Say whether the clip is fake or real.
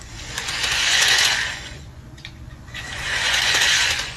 fake